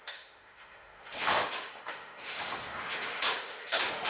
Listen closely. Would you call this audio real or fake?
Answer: fake